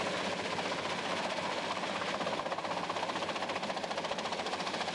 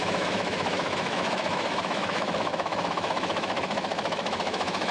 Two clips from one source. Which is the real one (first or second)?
first